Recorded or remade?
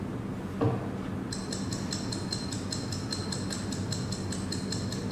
recorded